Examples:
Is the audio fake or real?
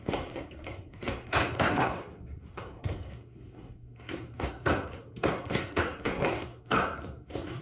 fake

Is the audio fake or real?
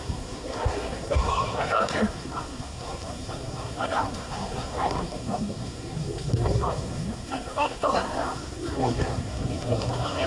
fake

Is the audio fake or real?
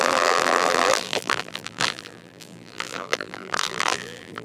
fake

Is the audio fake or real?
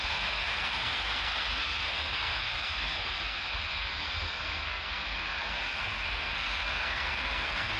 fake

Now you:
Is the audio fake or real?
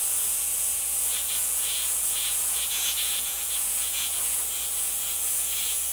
fake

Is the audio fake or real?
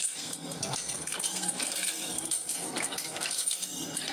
fake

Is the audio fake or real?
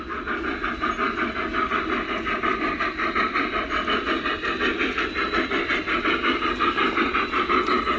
fake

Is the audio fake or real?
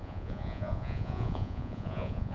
fake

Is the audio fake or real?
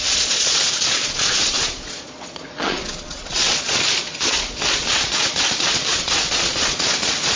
fake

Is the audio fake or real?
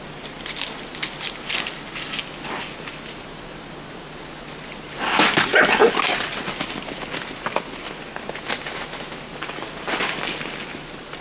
real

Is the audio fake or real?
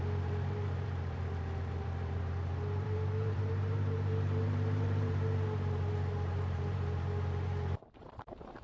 fake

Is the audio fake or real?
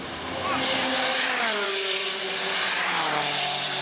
fake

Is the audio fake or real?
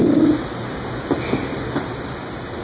real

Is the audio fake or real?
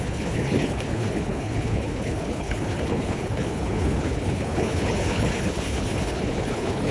fake